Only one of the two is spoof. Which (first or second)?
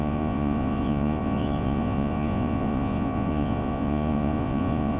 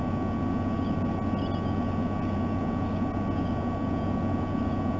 first